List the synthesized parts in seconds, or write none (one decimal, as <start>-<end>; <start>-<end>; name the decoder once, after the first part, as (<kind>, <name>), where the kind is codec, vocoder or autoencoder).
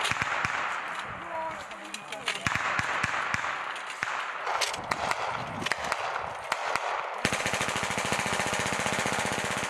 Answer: none